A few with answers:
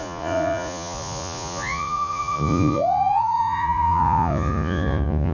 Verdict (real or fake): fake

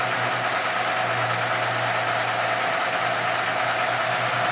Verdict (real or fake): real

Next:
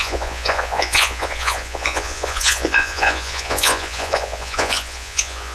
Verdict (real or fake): fake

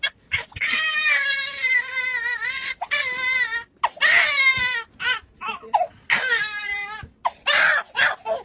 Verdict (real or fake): real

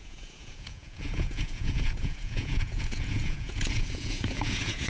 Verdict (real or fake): fake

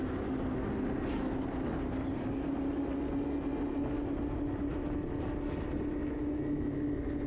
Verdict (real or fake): real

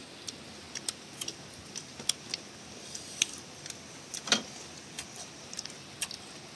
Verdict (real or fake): real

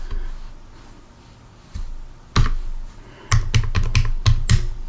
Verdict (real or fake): real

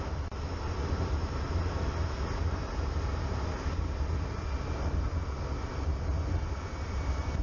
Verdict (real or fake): real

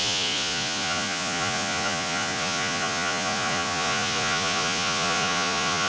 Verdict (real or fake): fake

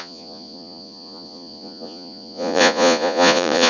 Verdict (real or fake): fake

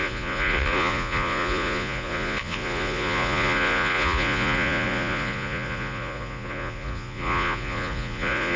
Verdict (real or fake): fake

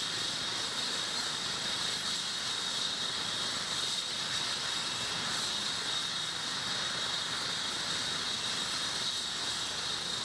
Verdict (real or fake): real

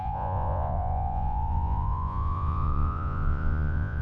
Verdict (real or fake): fake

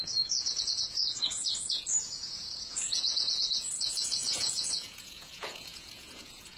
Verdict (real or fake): fake